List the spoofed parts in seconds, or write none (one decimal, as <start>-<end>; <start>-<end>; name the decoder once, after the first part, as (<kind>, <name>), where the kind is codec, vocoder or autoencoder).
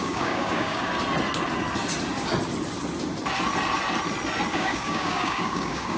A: 0.0-0.9 (codec, DAC); 4.5-6.0